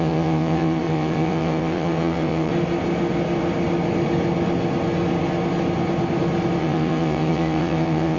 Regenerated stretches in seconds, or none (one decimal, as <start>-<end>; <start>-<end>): 0.0-2.5; 6.6-8.2